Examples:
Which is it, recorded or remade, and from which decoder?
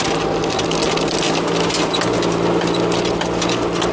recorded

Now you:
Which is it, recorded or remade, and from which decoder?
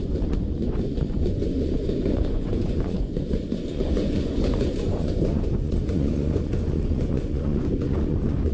remade, vocoder, Vocos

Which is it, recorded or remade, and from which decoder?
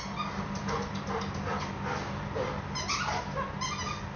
recorded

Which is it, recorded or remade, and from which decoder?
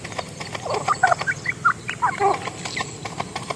recorded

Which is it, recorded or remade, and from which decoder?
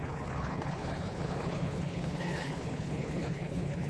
remade, codec, HILCodec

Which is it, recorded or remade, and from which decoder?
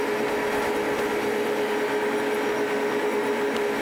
recorded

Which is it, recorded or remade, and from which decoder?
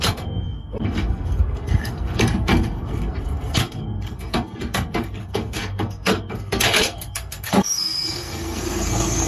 remade, codec, SNAC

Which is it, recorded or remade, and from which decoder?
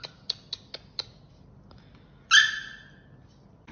recorded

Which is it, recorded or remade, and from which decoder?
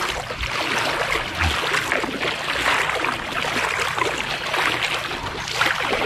recorded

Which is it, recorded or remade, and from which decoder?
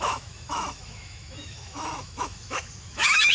remade, autoencoder, DAC-VAE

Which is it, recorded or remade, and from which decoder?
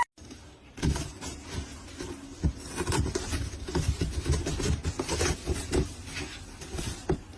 recorded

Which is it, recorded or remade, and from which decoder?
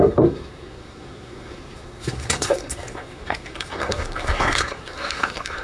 remade, codec, SNAC